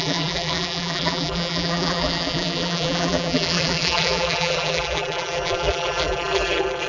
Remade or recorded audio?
remade